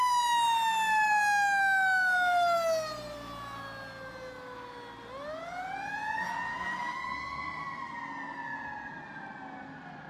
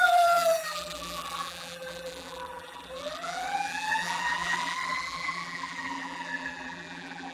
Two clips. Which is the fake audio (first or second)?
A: second